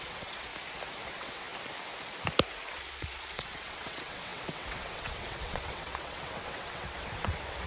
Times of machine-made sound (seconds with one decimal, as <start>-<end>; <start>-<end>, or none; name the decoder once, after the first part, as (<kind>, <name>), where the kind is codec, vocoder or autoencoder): 0.0-0.5 (vocoder, WaveNeXt); 1.0-1.5; 2.7-7.7